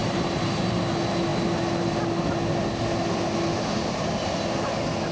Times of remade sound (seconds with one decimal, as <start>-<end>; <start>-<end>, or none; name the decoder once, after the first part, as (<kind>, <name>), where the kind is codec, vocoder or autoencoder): 0.0-0.8 (vocoder, BigVGAN v2)